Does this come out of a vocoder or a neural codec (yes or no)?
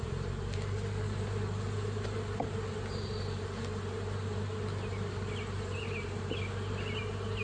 no